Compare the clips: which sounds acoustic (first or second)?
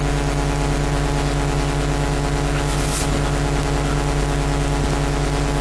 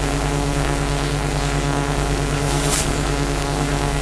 first